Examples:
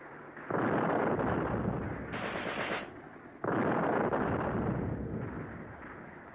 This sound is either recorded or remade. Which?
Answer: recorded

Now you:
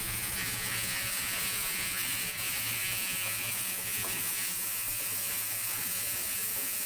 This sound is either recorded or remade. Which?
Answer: remade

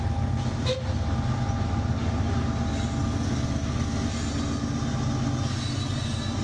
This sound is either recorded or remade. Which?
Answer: recorded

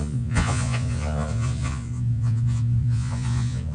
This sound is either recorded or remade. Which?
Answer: remade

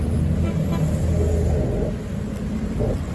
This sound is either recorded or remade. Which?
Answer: recorded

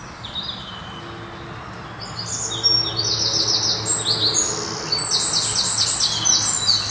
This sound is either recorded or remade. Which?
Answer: recorded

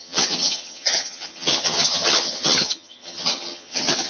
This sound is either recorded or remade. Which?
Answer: remade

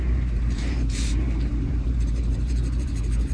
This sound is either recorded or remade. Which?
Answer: remade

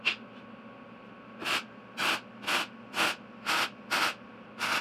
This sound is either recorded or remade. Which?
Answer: recorded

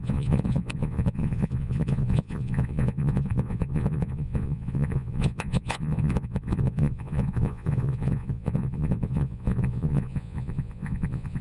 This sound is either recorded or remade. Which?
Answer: remade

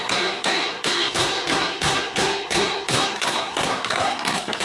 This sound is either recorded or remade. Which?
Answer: remade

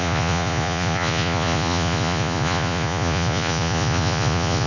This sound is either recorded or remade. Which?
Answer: remade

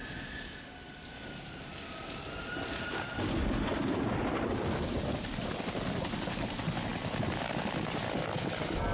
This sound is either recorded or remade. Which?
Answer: recorded